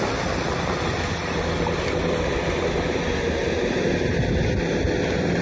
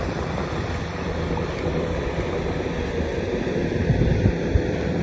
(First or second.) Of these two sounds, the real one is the first